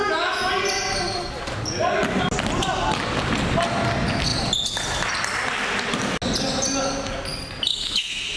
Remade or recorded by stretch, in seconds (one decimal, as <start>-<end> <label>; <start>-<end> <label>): 0.0-0.5 remade; 0.5-7.7 recorded; 7.7-8.4 remade